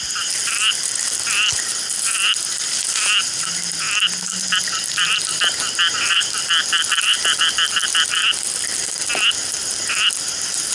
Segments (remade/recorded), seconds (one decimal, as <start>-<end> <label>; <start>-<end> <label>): 0.0-10.7 recorded